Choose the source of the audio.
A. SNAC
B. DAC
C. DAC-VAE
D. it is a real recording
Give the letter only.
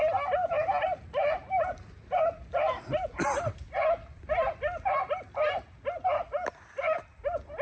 D